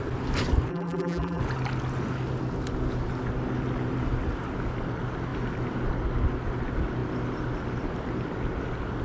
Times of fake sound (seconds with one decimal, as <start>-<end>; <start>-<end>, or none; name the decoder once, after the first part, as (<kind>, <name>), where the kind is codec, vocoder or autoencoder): 0.7-1.4 (vocoder, BigVGAN v2)